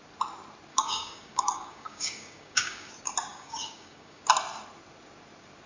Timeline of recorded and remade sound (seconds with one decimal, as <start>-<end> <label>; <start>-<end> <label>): 0.0-0.7 recorded; 0.7-2.9 remade; 2.9-3.3 recorded; 3.3-4.2 remade; 4.2-5.7 recorded